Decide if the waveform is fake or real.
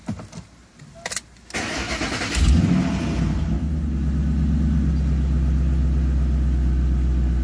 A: real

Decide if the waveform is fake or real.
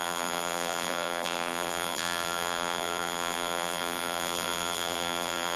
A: fake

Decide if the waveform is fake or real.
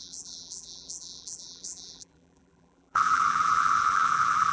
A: fake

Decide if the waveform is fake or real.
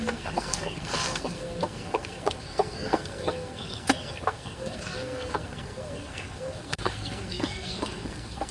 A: fake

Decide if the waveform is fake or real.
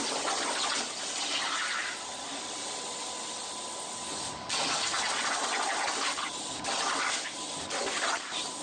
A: real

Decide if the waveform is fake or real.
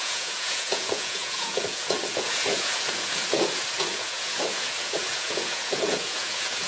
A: fake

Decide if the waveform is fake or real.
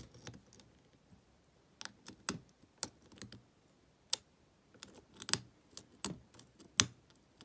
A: real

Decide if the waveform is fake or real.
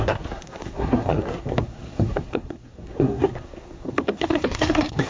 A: fake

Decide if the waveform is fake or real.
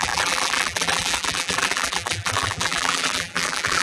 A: fake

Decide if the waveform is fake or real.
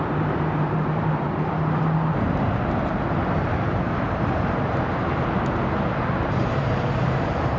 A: fake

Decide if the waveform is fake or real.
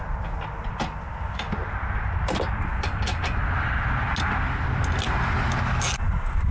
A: real